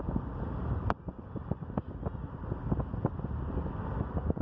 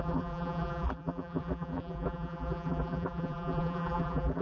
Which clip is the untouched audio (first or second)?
first